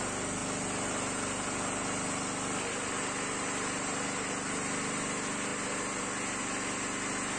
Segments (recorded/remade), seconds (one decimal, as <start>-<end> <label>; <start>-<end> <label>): 0.0-7.4 recorded